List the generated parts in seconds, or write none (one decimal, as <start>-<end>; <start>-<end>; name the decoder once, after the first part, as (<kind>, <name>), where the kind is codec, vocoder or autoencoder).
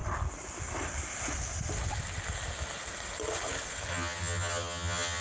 3.9-5.2 (vocoder, HiFi-GAN)